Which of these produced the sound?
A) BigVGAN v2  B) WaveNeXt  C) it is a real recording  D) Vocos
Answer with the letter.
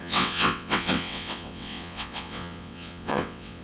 B